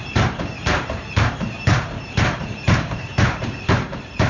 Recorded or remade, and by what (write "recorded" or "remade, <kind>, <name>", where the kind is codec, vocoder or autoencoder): remade, vocoder, BigVGAN v2